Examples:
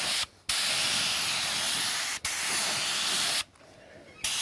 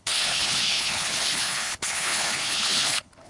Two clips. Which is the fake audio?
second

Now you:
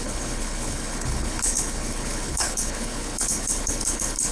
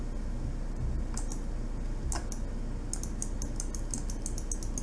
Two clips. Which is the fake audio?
first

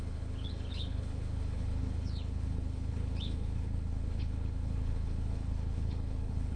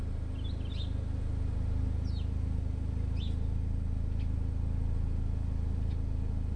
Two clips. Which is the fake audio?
first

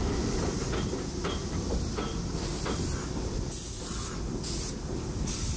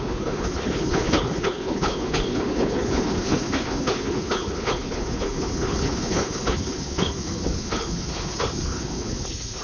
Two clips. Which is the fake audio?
second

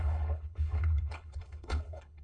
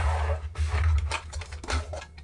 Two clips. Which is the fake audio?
first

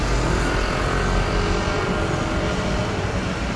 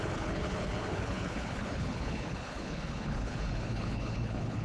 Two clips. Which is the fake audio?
second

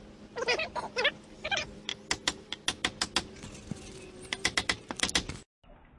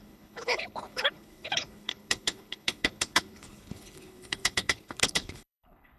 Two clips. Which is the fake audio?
second